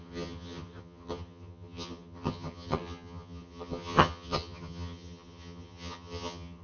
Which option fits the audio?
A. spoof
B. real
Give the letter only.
A